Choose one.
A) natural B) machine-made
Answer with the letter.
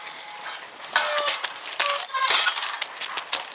A